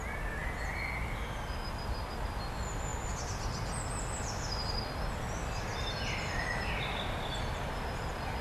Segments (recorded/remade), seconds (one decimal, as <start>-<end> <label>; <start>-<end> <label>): 0.0-8.4 recorded